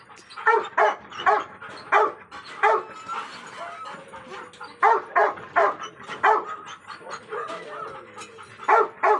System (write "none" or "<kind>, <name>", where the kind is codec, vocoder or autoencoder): none